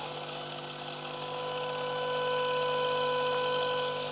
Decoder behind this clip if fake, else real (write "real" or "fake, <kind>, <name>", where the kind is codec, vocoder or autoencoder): real